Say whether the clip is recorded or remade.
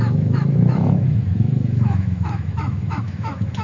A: remade